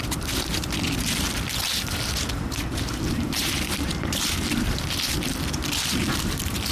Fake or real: fake